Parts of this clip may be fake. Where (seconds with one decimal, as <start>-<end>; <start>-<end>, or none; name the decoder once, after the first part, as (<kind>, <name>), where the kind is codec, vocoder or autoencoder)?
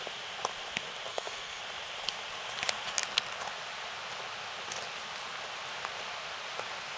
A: 1.1-1.6 (codec, SNAC)